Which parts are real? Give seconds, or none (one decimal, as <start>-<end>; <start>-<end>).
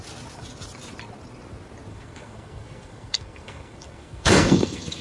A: 0.0-1.9